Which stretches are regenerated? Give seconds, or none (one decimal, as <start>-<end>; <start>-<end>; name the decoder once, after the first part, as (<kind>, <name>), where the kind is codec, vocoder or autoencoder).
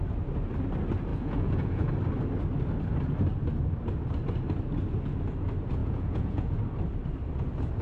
1.1-1.9 (vocoder, Vocos); 5.8-6.6